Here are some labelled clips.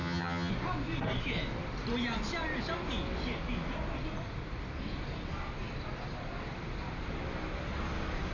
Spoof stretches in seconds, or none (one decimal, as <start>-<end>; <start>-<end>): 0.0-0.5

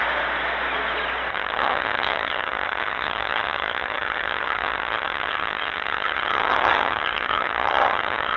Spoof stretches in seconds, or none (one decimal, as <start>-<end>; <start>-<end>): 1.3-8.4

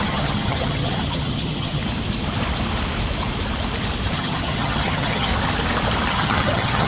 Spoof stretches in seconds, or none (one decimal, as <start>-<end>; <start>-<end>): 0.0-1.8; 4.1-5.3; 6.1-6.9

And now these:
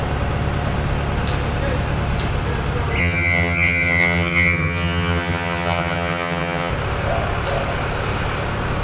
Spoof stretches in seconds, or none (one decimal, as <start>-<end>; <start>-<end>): 3.0-6.7

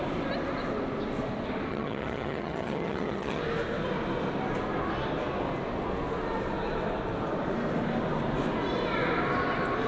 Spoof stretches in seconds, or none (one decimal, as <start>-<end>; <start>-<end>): 1.7-3.4

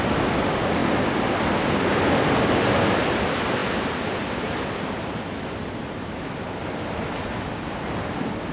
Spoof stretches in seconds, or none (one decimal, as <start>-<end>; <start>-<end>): none

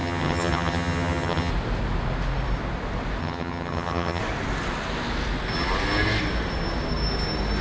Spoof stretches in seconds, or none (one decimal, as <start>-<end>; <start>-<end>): 0.0-1.5; 3.2-4.2